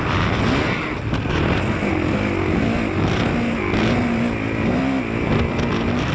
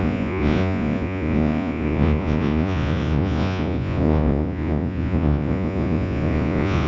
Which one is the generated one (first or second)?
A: second